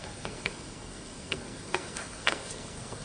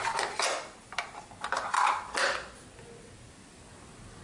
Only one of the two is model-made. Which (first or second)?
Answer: first